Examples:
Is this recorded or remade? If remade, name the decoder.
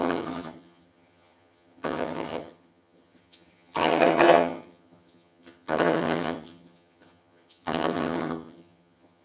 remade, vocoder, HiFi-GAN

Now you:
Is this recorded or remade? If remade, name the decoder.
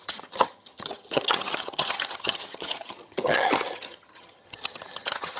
remade, vocoder, HiFi-GAN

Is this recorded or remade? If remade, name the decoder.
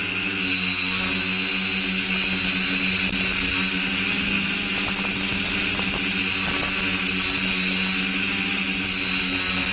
recorded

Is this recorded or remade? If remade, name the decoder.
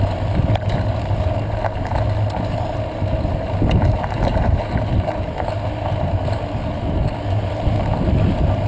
recorded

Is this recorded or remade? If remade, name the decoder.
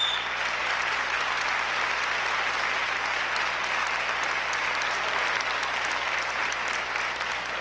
recorded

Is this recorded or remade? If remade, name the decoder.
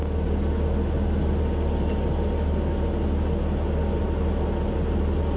recorded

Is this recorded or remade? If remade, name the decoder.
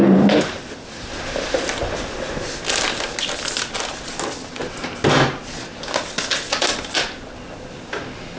recorded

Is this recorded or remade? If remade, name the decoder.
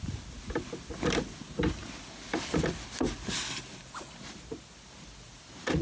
recorded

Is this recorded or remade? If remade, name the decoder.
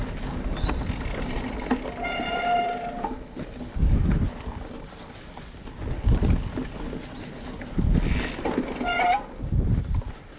recorded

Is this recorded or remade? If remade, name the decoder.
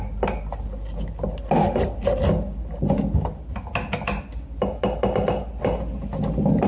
recorded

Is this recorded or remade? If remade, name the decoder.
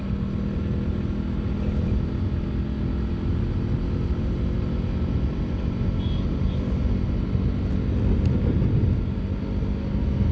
recorded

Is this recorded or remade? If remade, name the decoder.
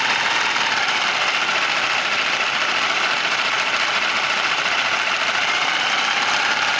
recorded